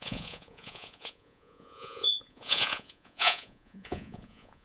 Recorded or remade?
remade